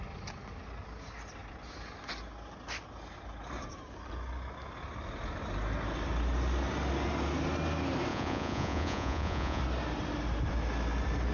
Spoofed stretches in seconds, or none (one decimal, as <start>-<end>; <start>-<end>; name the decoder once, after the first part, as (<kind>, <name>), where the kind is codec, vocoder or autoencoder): 8.1-9.6 (vocoder, Vocos)